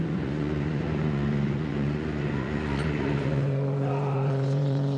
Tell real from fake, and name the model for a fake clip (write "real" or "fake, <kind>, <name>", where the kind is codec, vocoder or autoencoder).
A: fake, vocoder, Vocos